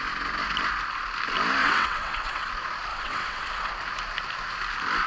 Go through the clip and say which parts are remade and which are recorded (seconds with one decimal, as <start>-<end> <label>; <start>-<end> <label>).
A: 0.0-1.6 recorded; 1.6-2.5 remade; 2.5-2.9 recorded; 2.9-3.7 remade; 3.7-5.1 recorded